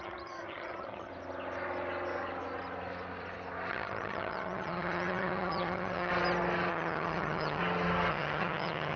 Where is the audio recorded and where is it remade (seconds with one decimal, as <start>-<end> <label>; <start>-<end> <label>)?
0.0-1.1 remade; 1.1-3.7 recorded; 3.7-6.1 remade; 6.1-6.7 recorded; 6.7-7.6 remade; 7.6-8.1 recorded; 8.1-9.0 remade